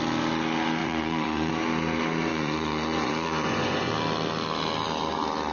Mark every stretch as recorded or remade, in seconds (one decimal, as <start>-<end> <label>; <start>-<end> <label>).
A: 0.0-0.8 recorded; 0.8-1.5 remade; 1.5-2.3 recorded; 2.3-3.9 remade; 3.9-5.5 recorded